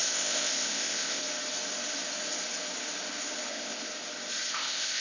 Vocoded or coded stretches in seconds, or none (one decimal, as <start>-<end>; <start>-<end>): 0.0-1.2; 3.5-3.9; 4.5-5.0